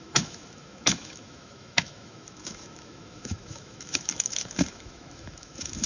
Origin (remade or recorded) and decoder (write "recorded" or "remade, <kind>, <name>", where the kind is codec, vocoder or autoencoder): remade, autoencoder, DAC-VAE